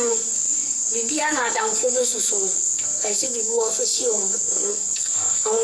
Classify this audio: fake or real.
fake